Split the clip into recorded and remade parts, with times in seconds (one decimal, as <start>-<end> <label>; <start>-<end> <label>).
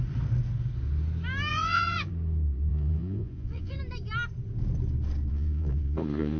0.0-1.5 recorded; 1.5-2.1 remade; 2.1-2.7 recorded; 2.7-3.8 remade; 3.8-5.3 recorded; 5.3-6.4 remade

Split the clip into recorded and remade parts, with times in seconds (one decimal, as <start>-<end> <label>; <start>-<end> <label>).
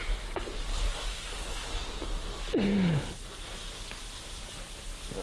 0.0-5.2 recorded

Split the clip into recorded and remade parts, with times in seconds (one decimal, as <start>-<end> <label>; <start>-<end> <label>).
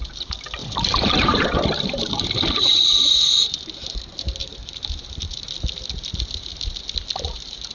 0.0-0.6 recorded; 0.6-2.7 remade; 2.7-4.4 recorded; 4.4-5.5 remade; 5.5-7.7 recorded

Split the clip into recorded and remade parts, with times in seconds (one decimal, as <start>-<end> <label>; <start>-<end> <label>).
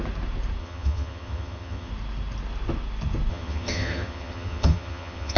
0.0-0.6 recorded; 0.6-1.9 remade; 1.9-3.3 recorded; 3.3-5.4 remade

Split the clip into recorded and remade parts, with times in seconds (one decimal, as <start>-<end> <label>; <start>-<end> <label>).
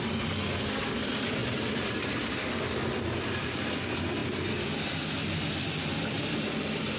0.0-7.0 recorded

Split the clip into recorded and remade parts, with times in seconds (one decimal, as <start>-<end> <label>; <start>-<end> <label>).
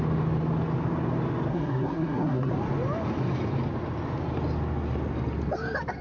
0.0-1.5 recorded; 1.5-2.5 remade; 2.5-6.0 recorded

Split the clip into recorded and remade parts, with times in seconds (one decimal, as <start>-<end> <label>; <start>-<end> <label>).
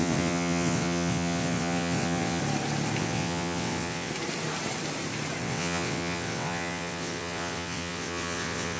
0.0-2.4 remade; 2.4-3.0 recorded; 3.0-4.1 remade; 4.1-5.4 recorded; 5.4-8.8 remade